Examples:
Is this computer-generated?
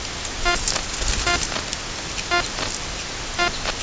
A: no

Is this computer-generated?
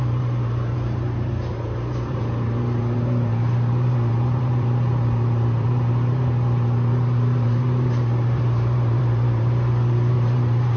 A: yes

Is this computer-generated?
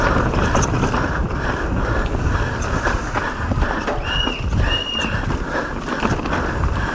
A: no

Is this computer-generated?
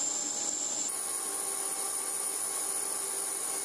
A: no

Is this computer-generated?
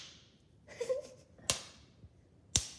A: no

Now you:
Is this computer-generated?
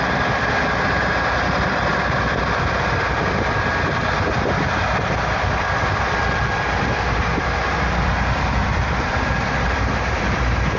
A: yes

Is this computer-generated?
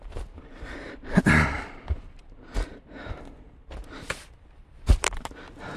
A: yes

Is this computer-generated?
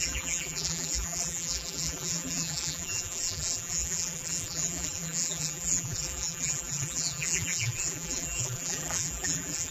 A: yes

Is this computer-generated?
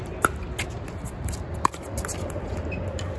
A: no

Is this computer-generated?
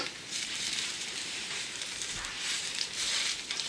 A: yes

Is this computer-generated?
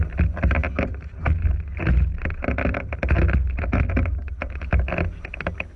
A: no